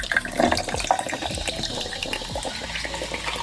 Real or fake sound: real